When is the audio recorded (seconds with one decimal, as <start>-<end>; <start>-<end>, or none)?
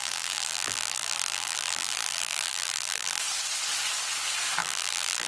3.2-4.6